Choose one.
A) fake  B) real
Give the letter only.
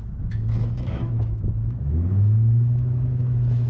A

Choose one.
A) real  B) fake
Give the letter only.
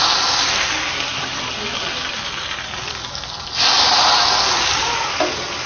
A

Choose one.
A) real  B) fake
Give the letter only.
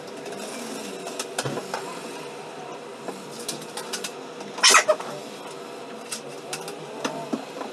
A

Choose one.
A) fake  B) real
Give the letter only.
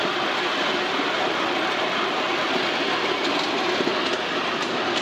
B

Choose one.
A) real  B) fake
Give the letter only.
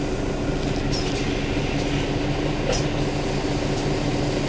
A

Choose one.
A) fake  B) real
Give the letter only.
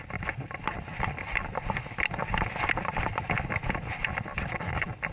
B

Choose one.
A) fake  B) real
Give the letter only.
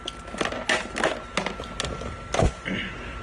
B